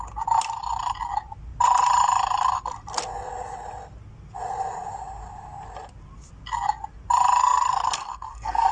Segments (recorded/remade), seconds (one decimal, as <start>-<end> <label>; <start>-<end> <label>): 0.0-7.4 recorded; 7.4-8.7 remade

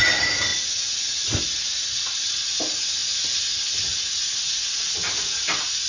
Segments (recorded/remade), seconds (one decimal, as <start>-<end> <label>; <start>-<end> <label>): 0.0-5.9 recorded

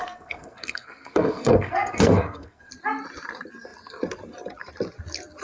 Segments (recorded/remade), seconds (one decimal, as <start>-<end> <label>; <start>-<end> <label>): 0.0-2.7 remade; 2.7-5.4 recorded

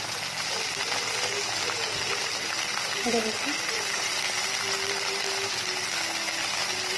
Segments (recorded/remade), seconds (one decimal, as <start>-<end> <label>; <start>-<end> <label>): 0.0-2.2 recorded; 2.2-5.6 remade; 5.6-7.0 recorded

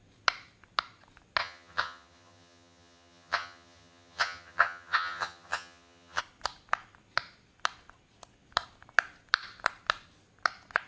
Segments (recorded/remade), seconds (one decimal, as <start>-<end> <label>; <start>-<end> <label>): 0.0-1.4 recorded; 1.4-6.2 remade; 6.2-10.9 recorded

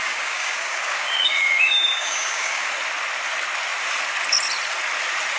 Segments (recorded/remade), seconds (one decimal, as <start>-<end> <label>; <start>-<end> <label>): 0.0-2.7 remade; 2.7-5.4 recorded